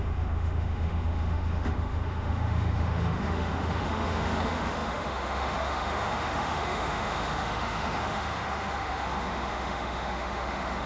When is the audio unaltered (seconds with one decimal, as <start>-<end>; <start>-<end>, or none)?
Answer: none

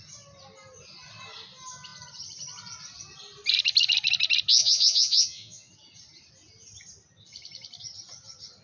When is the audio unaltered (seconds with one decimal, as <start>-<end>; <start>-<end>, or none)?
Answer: 0.0-4.6; 5.7-8.6

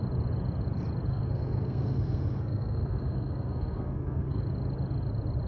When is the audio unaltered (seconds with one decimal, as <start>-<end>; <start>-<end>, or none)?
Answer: 0.0-1.1; 4.4-5.5

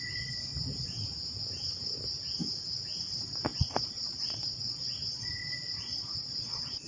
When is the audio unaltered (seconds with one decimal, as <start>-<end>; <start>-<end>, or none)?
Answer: 0.5-3.1

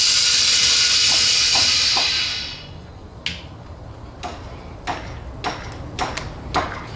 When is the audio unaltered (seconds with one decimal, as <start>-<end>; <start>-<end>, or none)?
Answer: 0.0-2.5; 3.2-7.0